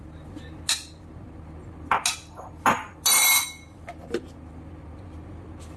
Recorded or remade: recorded